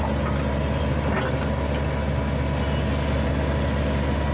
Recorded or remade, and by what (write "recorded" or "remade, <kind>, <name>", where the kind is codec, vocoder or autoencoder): recorded